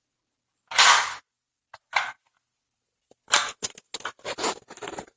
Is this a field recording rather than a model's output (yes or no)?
yes